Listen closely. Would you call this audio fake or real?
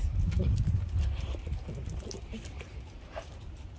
real